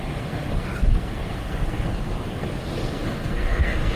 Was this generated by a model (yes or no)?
yes